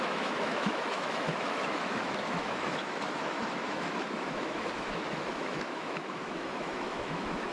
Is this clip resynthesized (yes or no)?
yes